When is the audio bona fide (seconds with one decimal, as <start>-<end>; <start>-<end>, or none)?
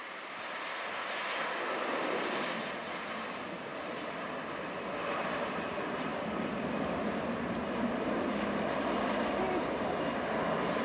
0.0-10.8